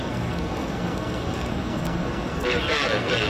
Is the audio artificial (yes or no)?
yes